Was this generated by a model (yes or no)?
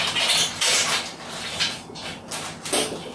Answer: no